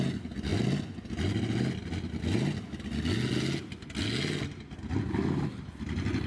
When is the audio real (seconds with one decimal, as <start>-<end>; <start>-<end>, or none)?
0.0-6.3